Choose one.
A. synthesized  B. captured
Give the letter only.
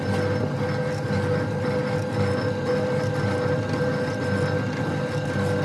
B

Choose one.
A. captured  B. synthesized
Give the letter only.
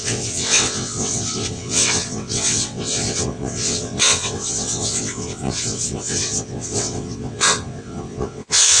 B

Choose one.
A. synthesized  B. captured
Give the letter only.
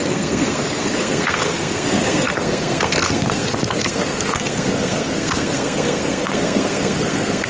A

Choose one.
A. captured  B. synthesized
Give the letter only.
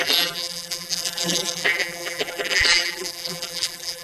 B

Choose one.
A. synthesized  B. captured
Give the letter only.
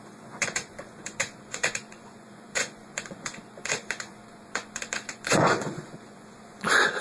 A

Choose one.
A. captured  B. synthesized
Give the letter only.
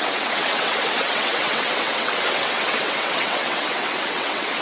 B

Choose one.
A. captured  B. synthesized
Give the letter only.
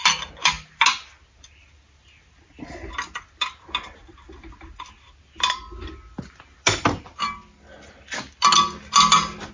A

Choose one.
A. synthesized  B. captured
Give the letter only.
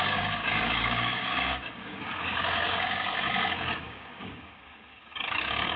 A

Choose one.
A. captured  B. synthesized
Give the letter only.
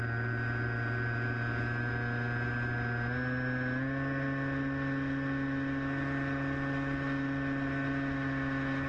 A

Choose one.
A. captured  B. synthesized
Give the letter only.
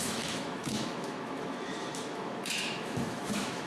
B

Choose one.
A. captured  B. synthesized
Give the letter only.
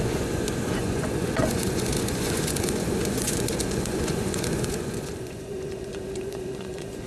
B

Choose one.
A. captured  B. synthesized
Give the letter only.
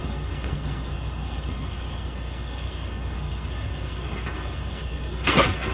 B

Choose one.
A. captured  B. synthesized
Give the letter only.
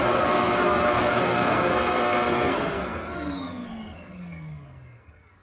B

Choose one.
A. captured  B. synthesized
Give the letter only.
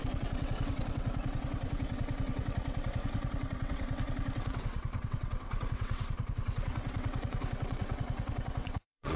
B